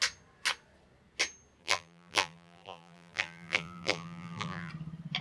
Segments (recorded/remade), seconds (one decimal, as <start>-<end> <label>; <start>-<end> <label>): 0.0-1.6 recorded; 1.6-4.7 remade; 4.7-5.2 recorded